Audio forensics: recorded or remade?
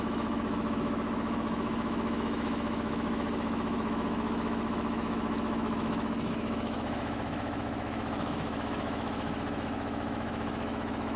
remade